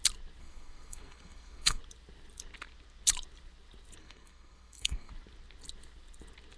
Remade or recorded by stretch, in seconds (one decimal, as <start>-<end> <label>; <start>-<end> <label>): 0.0-0.4 recorded; 0.4-1.8 remade; 1.8-4.0 recorded; 4.0-5.1 remade; 5.1-6.6 recorded